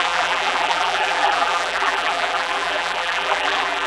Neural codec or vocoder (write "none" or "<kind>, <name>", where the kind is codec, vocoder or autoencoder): vocoder, BigVGAN v2